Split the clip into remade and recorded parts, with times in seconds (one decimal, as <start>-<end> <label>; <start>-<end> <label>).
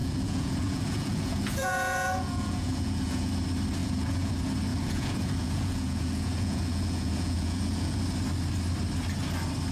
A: 0.0-3.3 remade; 3.3-3.8 recorded; 3.8-4.3 remade; 4.3-4.7 recorded; 4.7-8.0 remade; 8.0-9.7 recorded